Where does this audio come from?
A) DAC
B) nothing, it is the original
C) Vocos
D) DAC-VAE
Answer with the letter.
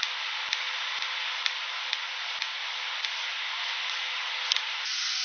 B